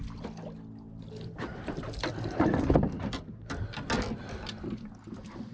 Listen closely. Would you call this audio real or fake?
real